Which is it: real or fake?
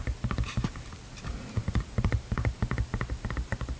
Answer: real